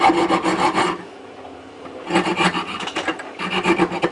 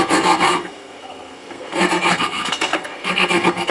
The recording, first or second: first